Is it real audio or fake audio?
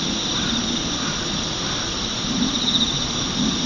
real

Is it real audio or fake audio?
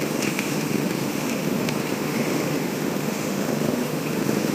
fake